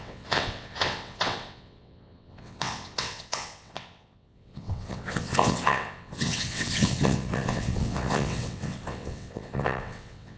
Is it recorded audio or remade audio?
remade